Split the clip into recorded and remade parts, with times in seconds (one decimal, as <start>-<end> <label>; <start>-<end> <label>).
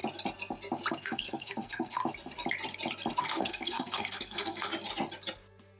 0.0-0.9 recorded; 0.9-2.0 remade; 2.0-3.2 recorded; 3.2-4.7 remade; 4.7-5.8 recorded